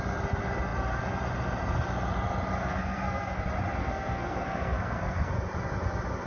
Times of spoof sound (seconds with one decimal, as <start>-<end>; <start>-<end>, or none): 2.6-3.4; 3.8-5.3